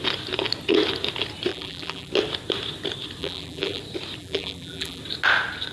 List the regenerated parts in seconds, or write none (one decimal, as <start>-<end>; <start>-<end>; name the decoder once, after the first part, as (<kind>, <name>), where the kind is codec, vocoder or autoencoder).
1.5-2.1 (vocoder, BigVGAN v2); 3.2-3.8; 4.2-5.0